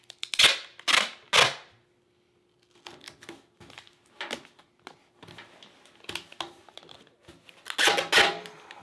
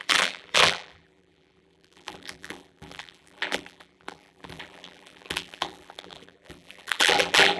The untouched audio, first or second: first